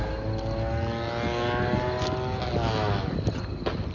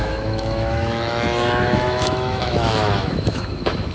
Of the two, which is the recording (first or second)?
first